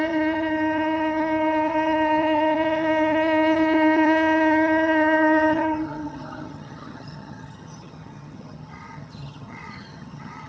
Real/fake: fake